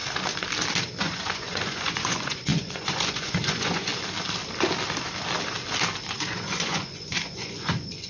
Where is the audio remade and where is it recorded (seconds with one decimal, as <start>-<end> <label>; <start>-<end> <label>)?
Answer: 0.0-1.0 recorded; 1.0-3.9 remade; 3.9-6.1 recorded; 6.1-8.1 remade